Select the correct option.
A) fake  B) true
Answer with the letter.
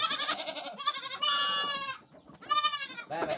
B